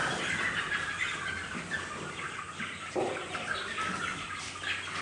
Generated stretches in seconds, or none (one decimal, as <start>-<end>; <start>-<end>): 0.0-2.9